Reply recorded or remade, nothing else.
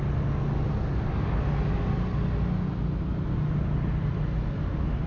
recorded